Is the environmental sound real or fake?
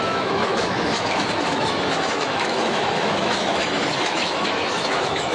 fake